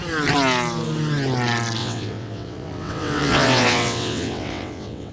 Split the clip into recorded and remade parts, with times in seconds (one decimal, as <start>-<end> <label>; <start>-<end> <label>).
0.0-1.8 recorded; 1.8-5.1 remade